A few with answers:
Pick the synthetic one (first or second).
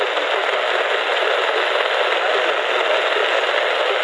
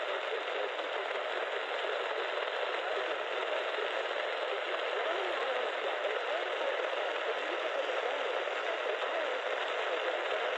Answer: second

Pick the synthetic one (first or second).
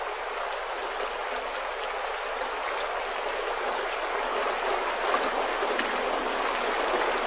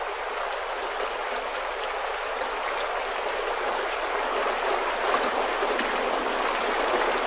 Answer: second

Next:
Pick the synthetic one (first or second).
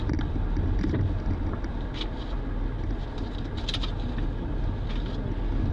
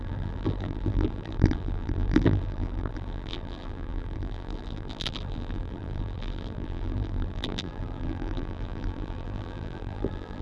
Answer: second